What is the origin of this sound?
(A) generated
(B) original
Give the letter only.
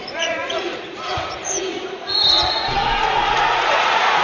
A